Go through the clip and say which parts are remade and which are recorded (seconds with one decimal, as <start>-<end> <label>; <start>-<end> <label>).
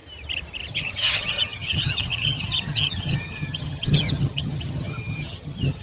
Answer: 0.0-0.7 recorded; 0.7-5.8 remade